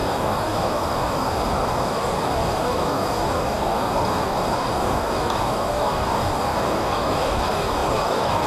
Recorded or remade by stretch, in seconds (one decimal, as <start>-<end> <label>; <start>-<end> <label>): 0.0-8.5 remade